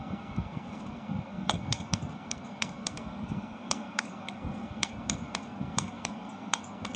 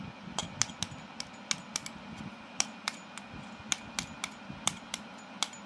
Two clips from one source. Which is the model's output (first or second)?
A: first